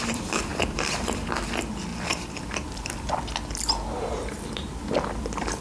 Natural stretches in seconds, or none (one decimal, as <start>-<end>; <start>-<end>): 0.0-0.5; 1.3-1.9; 3.1-5.6